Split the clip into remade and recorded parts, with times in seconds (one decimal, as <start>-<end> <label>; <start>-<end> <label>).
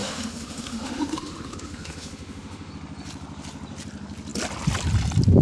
0.0-2.7 remade; 2.7-5.4 recorded